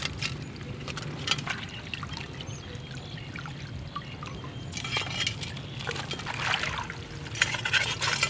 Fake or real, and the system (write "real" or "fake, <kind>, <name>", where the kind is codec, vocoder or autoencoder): real